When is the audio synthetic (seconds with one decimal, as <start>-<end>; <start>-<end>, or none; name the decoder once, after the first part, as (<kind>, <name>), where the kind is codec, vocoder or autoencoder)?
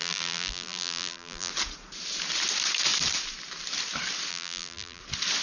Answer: 0.0-1.5 (vocoder, BigVGAN v2); 4.3-5.0